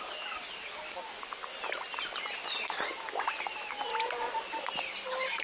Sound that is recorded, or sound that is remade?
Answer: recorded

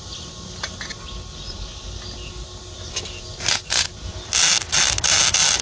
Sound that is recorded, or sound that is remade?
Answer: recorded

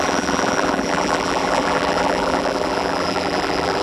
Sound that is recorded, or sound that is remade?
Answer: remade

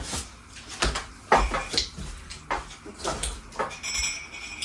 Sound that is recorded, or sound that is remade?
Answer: recorded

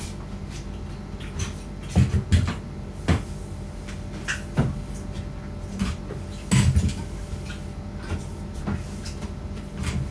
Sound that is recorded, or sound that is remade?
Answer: recorded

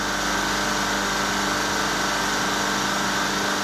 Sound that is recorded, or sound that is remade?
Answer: recorded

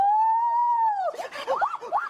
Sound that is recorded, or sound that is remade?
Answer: remade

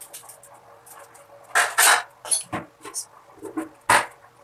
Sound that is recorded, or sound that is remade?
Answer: recorded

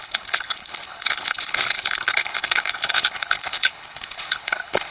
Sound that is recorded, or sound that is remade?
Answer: remade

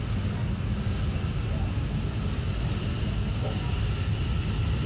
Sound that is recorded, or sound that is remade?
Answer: recorded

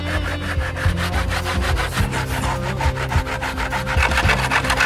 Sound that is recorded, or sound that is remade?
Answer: recorded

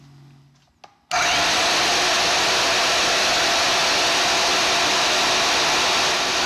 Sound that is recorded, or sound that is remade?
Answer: recorded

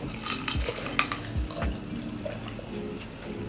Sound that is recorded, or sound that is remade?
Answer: recorded